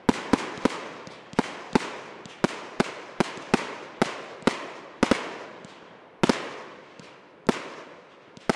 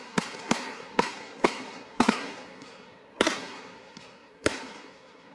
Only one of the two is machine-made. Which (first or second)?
second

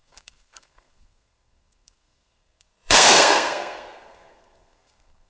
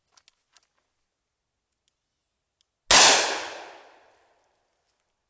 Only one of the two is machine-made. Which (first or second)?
first